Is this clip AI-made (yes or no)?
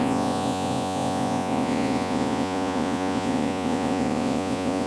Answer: yes